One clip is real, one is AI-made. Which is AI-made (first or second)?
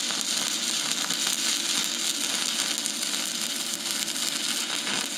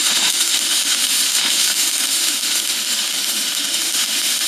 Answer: second